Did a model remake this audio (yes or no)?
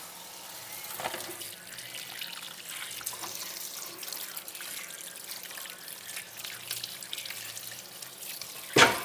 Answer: no